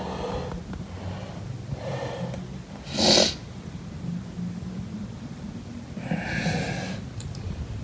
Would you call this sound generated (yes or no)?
no